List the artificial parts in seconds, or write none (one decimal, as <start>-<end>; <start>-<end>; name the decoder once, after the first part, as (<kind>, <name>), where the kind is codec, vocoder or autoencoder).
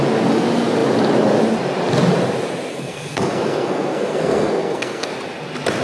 2.7-5.1 (codec, SNAC)